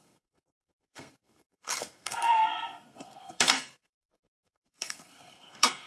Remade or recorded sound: remade